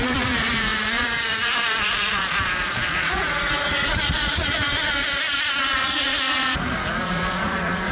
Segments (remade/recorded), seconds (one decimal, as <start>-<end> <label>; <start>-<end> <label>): 0.0-7.9 remade